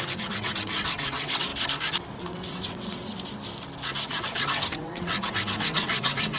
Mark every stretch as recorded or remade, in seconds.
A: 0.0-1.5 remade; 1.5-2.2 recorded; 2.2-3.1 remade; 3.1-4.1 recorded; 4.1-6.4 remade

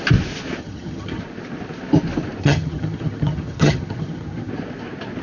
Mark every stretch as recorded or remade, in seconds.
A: 0.0-0.6 recorded; 0.6-1.2 remade; 1.2-2.4 recorded; 2.4-4.5 remade; 4.5-5.2 recorded